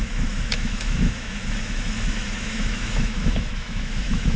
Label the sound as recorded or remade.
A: remade